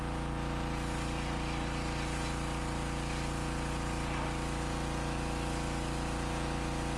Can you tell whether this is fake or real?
real